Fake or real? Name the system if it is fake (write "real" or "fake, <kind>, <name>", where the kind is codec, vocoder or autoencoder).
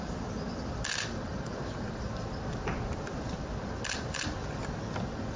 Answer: real